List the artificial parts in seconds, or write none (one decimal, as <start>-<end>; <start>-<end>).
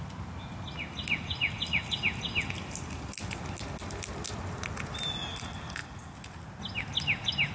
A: none